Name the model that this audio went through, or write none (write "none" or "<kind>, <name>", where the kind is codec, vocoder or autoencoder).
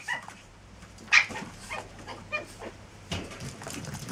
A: vocoder, BigVGAN v2